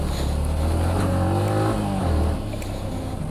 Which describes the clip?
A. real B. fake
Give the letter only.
A